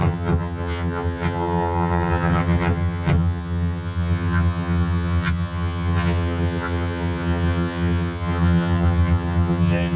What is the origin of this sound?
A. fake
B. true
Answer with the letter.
A